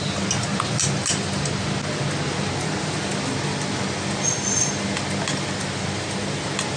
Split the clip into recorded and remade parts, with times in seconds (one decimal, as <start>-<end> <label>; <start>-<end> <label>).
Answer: 0.0-6.8 recorded